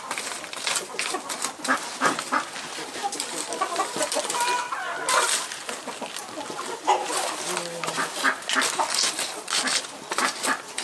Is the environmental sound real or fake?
real